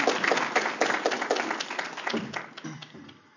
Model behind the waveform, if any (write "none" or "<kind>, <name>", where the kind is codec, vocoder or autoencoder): none